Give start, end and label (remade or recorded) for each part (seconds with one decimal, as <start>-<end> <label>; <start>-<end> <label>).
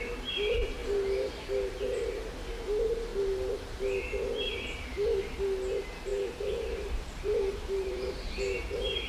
0.0-6.1 recorded; 6.1-9.1 remade